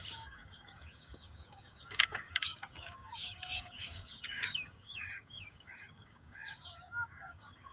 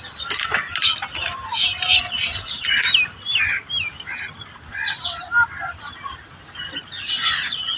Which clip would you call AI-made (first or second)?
first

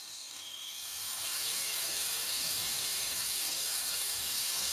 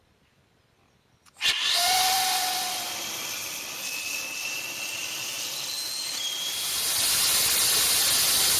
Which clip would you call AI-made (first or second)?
first